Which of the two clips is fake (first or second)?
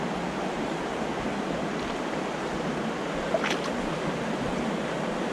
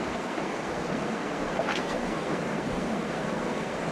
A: second